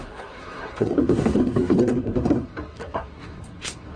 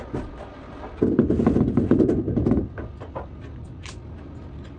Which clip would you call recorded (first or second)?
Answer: second